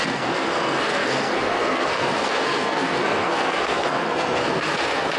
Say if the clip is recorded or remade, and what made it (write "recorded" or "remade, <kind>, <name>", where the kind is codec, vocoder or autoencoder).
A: remade, codec, SNAC